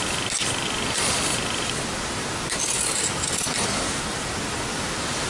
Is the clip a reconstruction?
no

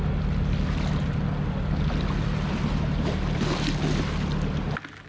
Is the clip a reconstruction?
no